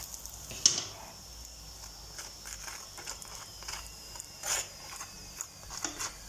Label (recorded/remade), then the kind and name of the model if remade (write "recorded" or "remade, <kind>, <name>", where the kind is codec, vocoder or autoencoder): recorded